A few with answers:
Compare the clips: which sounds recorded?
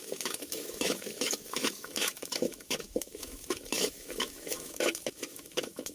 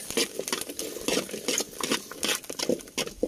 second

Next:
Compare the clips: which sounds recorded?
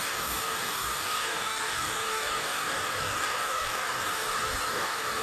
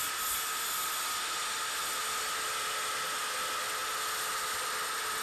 second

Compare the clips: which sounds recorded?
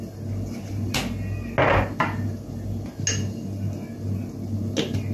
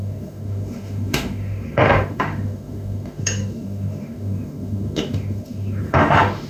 first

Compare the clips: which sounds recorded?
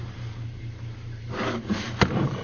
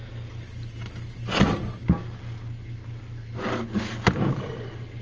second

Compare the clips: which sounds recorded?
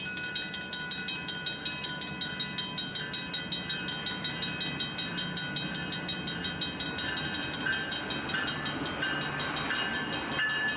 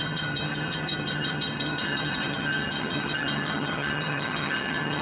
first